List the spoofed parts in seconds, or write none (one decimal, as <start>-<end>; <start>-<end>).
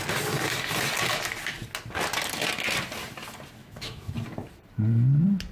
3.6-4.1